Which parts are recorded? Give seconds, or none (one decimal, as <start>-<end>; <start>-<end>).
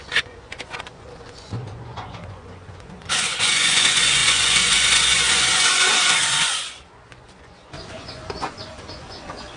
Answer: none